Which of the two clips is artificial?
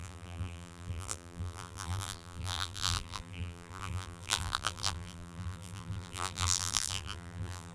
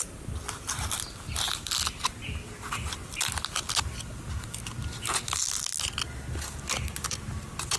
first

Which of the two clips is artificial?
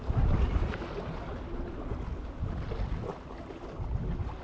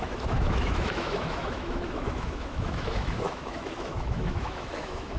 second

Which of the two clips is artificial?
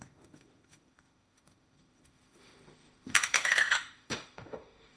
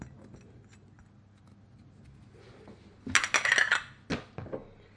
first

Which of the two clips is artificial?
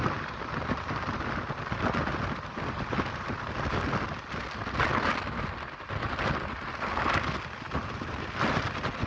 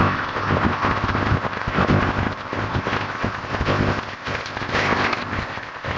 second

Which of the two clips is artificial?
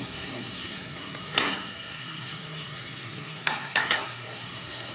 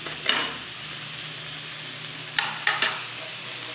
first